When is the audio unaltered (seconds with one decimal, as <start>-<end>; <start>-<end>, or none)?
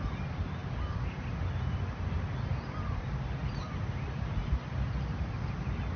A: 0.0-6.0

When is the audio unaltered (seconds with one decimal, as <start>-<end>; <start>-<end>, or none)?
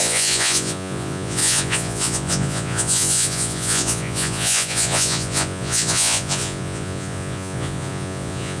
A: none